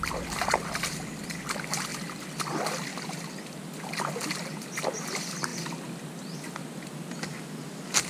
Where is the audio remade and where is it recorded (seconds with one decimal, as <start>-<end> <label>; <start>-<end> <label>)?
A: 0.0-8.1 recorded